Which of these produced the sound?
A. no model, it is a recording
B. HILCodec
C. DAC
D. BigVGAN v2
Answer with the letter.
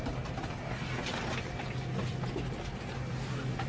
A